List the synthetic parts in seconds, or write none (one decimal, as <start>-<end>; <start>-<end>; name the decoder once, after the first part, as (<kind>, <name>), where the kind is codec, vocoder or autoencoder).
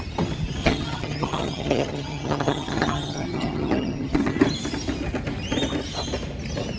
0.6-4.4 (vocoder, HiFi-GAN)